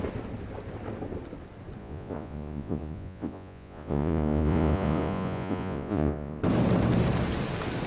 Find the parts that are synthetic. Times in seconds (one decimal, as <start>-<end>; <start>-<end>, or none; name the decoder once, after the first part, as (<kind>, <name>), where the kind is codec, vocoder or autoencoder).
1.8-6.4 (vocoder, Vocos)